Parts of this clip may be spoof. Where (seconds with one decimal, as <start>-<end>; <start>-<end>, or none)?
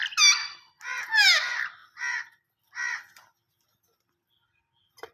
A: none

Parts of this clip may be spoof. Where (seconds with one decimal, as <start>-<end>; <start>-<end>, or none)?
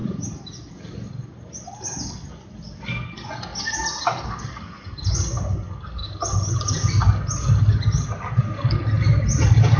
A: 0.0-2.3